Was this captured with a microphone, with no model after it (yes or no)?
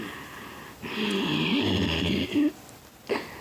yes